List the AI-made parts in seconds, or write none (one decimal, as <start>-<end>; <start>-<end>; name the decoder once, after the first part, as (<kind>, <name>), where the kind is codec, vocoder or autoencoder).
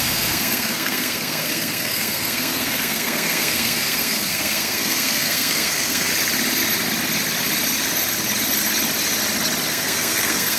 0.0-6.1 (codec, SNAC); 9.7-10.6